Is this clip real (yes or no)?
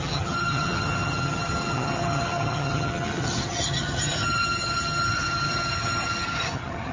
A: no